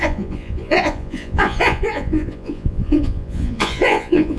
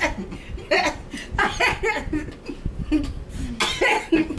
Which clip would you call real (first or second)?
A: second